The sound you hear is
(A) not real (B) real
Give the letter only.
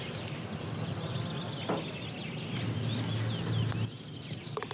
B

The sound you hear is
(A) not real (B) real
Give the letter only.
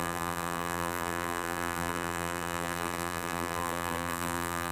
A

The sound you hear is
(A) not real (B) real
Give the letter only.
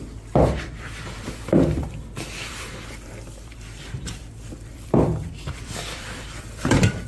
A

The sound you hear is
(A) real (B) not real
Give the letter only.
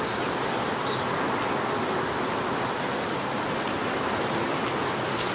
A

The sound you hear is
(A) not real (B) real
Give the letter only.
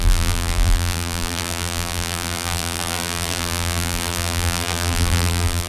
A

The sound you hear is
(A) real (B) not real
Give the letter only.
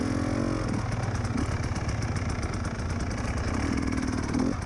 A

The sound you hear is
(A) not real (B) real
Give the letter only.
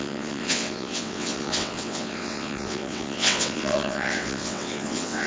A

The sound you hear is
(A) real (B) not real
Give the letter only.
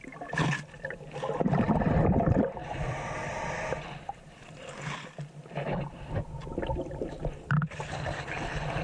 B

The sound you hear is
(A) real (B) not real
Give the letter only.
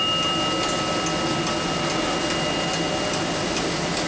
A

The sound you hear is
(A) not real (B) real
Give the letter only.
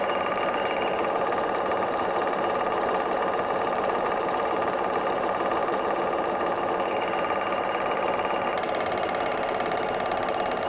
A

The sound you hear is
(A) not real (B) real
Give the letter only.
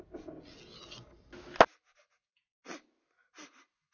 B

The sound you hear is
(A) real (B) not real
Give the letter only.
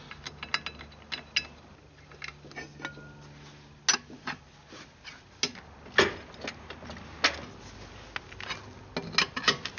A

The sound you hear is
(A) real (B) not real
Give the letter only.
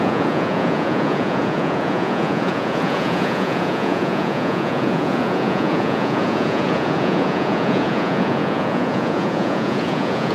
B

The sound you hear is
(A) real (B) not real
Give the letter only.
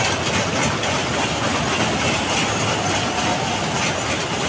A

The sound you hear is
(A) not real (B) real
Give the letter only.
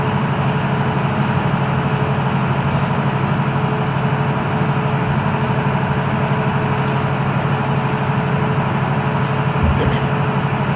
B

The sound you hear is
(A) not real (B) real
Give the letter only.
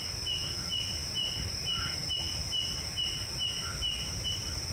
B